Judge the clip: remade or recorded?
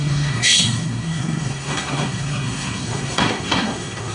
remade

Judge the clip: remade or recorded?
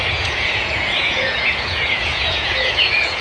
remade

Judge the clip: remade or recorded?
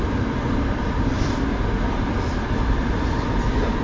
remade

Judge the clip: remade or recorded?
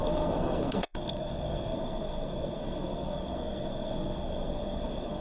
remade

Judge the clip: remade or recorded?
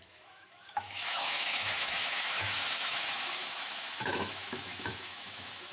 remade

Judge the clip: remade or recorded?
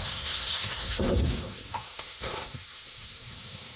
remade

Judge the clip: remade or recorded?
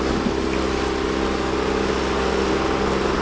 recorded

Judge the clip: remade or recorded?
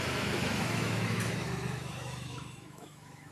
remade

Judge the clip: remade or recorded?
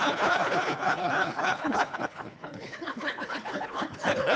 remade